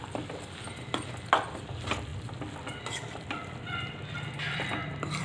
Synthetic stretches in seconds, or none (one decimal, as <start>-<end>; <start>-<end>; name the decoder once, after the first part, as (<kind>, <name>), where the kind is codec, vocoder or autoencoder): none